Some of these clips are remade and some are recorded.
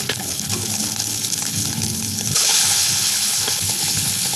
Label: remade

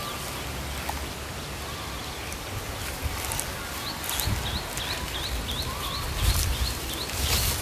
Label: recorded